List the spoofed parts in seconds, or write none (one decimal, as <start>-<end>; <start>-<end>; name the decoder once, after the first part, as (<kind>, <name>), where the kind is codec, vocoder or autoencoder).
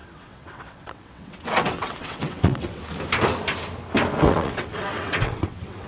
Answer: 0.0-2.8 (vocoder, WaveNeXt); 4.2-5.9